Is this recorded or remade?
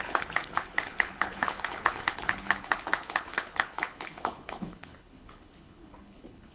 remade